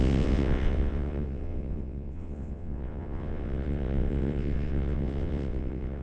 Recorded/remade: remade